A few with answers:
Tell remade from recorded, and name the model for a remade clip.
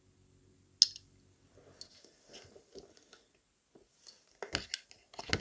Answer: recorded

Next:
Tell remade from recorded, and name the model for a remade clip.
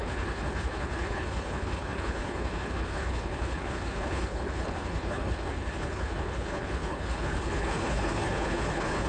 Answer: remade, codec, HILCodec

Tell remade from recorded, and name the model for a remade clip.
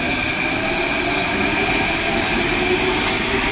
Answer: recorded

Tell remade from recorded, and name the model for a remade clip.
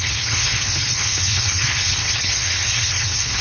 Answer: remade, codec, HILCodec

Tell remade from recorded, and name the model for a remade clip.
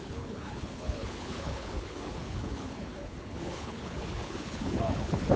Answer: remade, codec, HILCodec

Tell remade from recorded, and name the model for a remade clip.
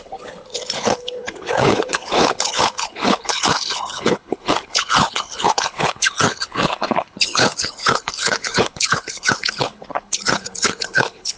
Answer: remade, codec, HILCodec